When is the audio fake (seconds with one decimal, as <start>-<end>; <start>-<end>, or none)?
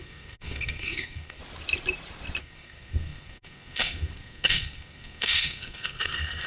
0.0-1.4; 2.4-6.5